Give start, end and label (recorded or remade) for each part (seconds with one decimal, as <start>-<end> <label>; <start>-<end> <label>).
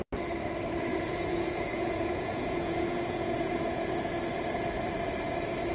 0.0-0.9 recorded; 0.9-4.1 remade; 4.1-5.7 recorded